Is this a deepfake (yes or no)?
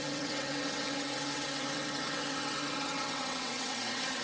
yes